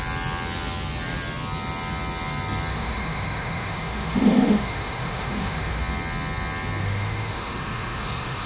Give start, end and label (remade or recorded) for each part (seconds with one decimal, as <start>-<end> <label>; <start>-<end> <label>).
0.0-2.7 recorded; 2.7-5.8 remade; 5.8-6.8 recorded; 6.8-8.5 remade